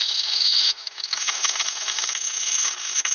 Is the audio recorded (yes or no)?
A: no